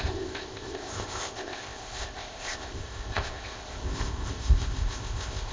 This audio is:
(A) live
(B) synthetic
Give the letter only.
B